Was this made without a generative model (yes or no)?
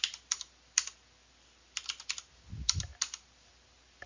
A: yes